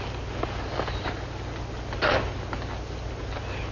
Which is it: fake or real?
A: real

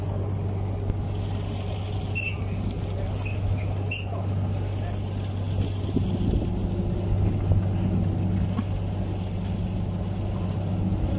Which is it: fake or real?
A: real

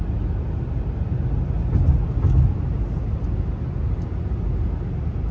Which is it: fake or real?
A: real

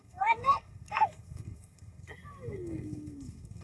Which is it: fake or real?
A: fake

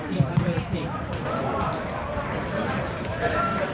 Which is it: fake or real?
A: fake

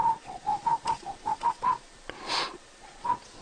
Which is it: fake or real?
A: fake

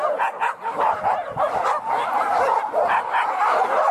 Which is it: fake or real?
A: fake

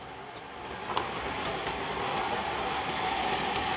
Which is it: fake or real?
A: real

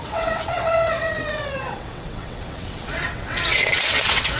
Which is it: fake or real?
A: fake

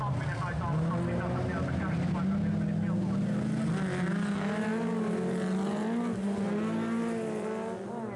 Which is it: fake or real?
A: real